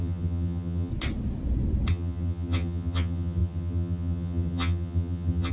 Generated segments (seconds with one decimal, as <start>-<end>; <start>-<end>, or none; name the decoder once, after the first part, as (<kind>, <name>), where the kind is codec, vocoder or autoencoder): 0.0-0.9 (vocoder, HiFi-GAN); 1.9-5.5